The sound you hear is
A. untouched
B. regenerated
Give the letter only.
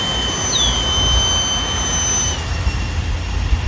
A